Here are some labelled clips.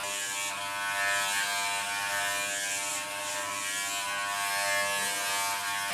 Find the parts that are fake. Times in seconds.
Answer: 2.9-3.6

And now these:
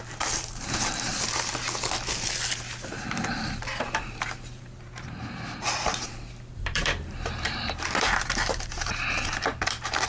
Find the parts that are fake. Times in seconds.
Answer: 0.0-1.1; 3.2-10.1

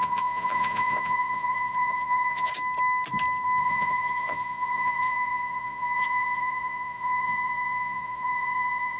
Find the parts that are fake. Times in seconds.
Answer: 0.0-2.5; 3.6-9.0

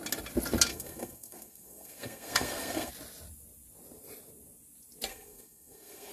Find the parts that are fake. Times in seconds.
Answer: 0.7-2.9; 5.1-6.1

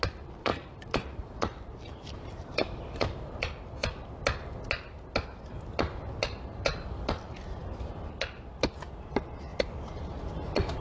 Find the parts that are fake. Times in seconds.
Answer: 0.5-3.5

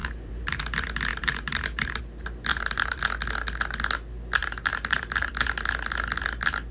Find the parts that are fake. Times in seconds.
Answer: 0.0-0.6; 1.1-2.0; 2.5-3.0; 4.4-5.3